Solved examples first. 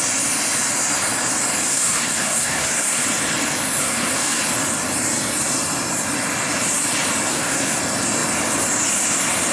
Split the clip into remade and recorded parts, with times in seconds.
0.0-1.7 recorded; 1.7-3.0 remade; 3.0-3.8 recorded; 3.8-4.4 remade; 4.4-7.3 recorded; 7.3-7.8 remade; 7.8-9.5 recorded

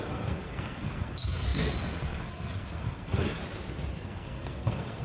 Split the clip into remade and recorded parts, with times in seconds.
0.0-3.4 remade; 3.4-3.9 recorded; 3.9-5.0 remade